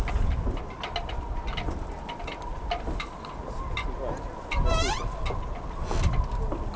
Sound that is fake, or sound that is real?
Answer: real